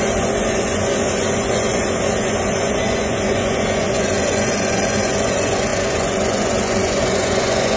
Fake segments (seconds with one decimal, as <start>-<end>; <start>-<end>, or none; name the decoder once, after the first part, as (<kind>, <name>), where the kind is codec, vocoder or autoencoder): 0.0-7.8 (vocoder, Vocos)